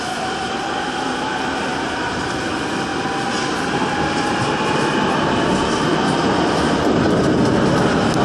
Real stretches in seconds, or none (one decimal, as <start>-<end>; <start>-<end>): 0.0-1.7; 2.4-8.2